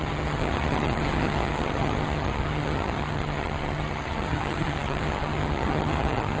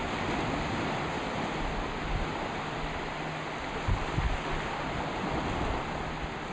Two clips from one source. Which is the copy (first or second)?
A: first